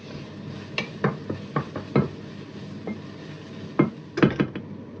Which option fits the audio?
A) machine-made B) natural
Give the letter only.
B